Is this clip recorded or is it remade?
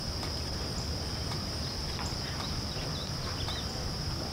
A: recorded